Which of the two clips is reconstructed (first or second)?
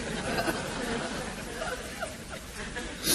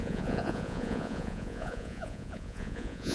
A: second